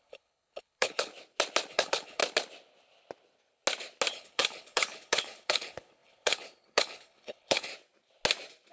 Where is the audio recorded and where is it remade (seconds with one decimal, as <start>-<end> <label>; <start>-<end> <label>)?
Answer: 0.0-1.1 remade; 1.1-1.7 recorded; 1.7-2.2 remade; 2.2-4.1 recorded; 4.1-7.7 remade; 7.7-8.7 recorded